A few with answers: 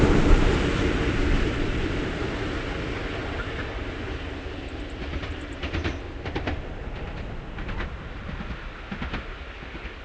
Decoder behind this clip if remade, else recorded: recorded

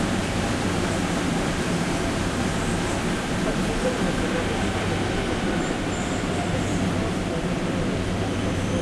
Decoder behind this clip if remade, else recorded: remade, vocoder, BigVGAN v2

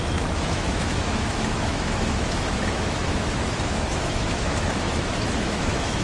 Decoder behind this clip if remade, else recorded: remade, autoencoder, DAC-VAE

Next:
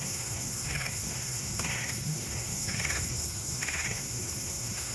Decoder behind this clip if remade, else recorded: remade, codec, SNAC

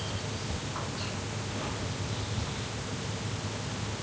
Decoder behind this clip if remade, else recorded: recorded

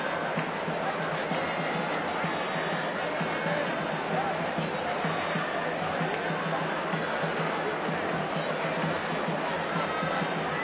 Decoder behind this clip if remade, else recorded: recorded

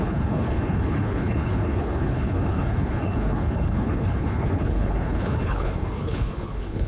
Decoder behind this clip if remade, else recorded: remade, codec, HILCodec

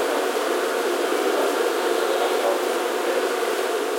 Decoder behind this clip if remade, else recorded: recorded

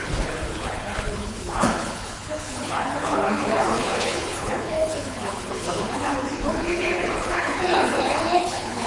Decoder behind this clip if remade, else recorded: remade, codec, HILCodec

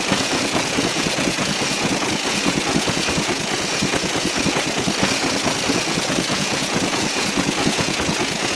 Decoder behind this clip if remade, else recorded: remade, vocoder, Vocos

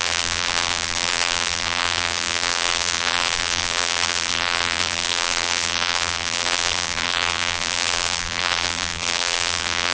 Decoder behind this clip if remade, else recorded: remade, vocoder, BigVGAN v2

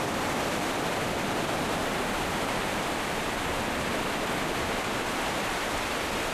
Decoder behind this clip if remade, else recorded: remade, vocoder, BigVGAN v2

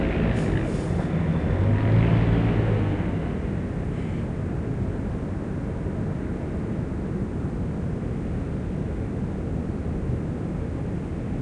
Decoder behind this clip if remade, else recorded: recorded